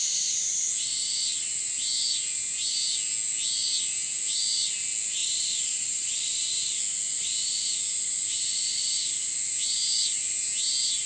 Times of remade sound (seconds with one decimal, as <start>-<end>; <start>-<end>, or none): 5.2-6.8